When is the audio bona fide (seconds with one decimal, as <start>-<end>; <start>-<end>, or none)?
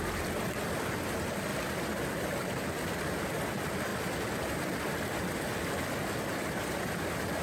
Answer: 0.0-7.4